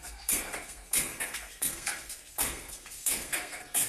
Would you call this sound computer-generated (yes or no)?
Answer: yes